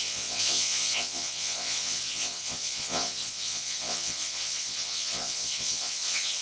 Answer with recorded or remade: remade